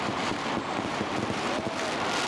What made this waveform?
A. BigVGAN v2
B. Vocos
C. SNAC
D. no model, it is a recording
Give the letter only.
D